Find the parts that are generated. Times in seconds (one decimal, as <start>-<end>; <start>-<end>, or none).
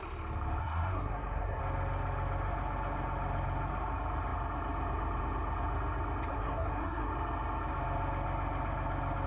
0.6-1.6; 6.3-7.1